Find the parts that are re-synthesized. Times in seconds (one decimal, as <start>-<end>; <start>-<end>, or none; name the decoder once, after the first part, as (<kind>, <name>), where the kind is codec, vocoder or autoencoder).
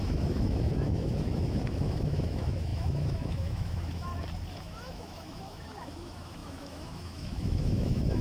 0.0-4.1 (autoencoder, DAC-VAE); 4.6-8.2